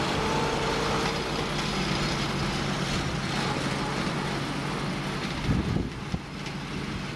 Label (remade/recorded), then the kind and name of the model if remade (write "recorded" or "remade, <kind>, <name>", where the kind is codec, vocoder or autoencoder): recorded